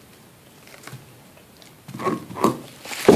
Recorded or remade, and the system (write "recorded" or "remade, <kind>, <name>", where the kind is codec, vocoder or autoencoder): recorded